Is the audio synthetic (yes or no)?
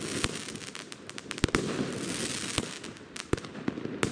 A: no